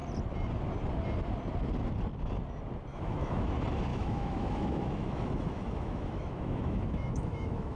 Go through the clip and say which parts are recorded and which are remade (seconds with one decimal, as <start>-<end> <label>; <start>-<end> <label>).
0.0-2.9 recorded; 2.9-3.5 remade; 3.5-3.9 recorded; 3.9-7.8 remade

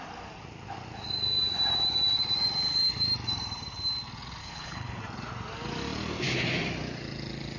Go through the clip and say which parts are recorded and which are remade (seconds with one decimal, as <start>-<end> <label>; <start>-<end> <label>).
0.0-4.4 recorded; 4.4-5.0 remade; 5.0-7.6 recorded

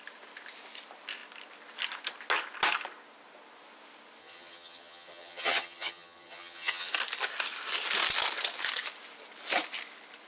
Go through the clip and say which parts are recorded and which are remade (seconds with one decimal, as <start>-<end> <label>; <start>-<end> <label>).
0.0-4.2 recorded; 4.2-6.9 remade; 6.9-10.3 recorded

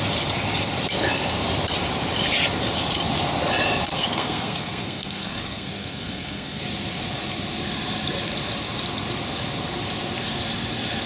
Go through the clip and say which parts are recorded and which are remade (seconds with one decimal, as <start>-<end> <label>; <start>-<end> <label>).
0.0-3.9 recorded; 3.9-6.6 remade; 6.6-11.1 recorded

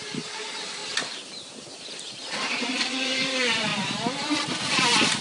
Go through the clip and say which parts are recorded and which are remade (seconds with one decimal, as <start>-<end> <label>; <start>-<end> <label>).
0.0-0.8 remade; 0.8-1.7 recorded; 1.7-3.7 remade; 3.7-4.7 recorded; 4.7-5.2 remade

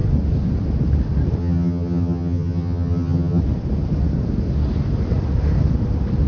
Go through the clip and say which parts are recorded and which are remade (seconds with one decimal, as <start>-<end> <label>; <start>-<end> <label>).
0.0-1.4 recorded; 1.4-3.4 remade; 3.4-6.3 recorded

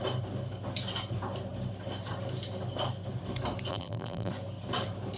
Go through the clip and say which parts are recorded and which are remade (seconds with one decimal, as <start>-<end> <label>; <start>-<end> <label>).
0.0-3.7 recorded; 3.7-4.3 remade; 4.3-5.2 recorded

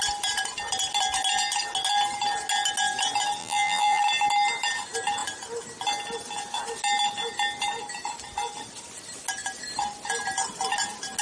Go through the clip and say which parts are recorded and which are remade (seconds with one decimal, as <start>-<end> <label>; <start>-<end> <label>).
0.0-3.4 recorded; 3.4-4.0 remade; 4.0-11.2 recorded